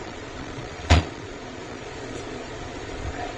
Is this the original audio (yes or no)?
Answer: no